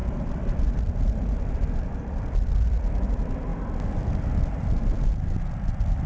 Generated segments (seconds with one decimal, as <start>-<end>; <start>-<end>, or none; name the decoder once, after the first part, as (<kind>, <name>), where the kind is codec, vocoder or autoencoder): 0.0-2.4 (vocoder, BigVGAN v2)